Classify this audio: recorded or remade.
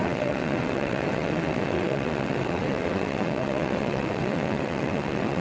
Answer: remade